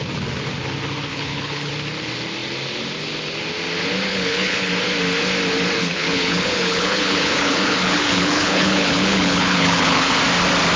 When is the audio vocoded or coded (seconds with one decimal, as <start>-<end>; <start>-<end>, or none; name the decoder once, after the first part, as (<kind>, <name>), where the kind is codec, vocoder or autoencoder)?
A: 1.1-1.7 (codec, HILCodec); 4.1-4.7; 5.8-10.2